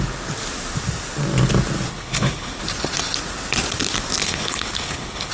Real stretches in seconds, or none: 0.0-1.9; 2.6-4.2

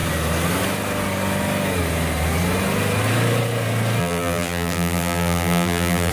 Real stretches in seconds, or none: 0.0-4.0

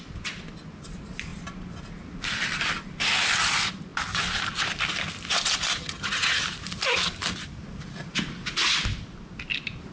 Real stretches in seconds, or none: 0.0-5.8; 6.4-9.9

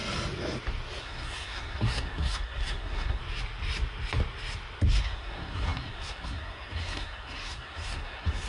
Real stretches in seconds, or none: 0.0-1.0; 3.2-5.0